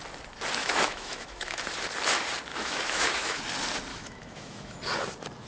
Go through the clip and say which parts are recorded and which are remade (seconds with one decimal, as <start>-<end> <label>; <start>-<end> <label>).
0.0-0.6 recorded; 0.6-1.6 remade; 1.6-2.5 recorded; 2.5-3.4 remade; 3.4-3.9 recorded; 3.9-4.8 remade; 4.8-5.5 recorded